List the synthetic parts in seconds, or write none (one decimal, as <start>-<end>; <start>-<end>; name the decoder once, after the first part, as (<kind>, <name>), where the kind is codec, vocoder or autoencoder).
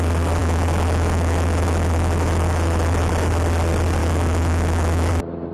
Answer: 0.4-3.1 (autoencoder, DAC-VAE); 4.0-5.1